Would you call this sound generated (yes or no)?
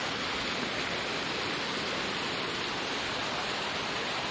no